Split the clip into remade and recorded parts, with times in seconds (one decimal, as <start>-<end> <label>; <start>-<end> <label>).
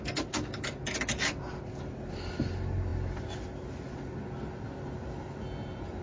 0.0-6.0 recorded